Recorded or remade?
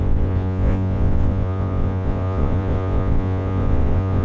remade